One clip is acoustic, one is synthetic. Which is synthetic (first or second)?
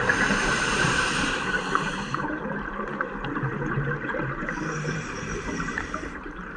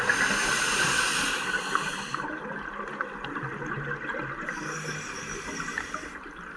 first